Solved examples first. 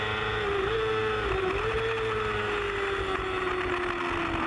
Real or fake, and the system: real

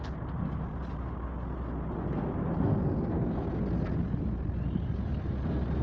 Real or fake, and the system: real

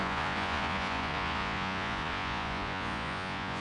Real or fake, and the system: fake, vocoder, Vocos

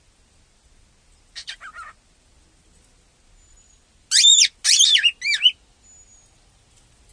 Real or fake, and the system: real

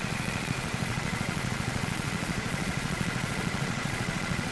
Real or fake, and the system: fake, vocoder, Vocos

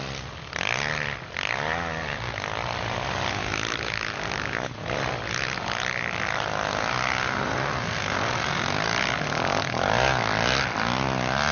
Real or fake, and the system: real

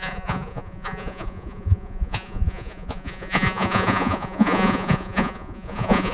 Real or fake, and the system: fake, vocoder, Vocos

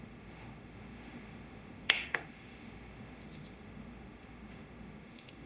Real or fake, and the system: fake, autoencoder, DAC-VAE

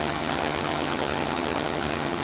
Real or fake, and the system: fake, vocoder, HiFi-GAN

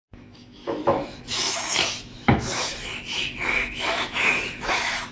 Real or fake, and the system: fake, autoencoder, DAC-VAE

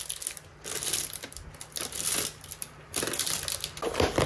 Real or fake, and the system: real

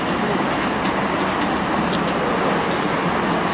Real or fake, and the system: real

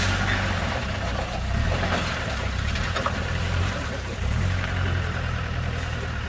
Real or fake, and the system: fake, vocoder, BigVGAN v2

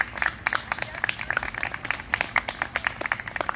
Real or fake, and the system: real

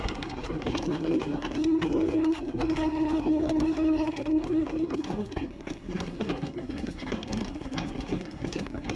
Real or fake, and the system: fake, codec, SNAC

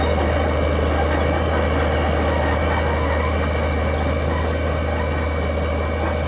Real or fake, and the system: real